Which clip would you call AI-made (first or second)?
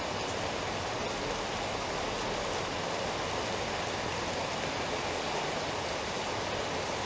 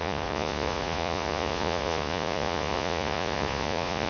second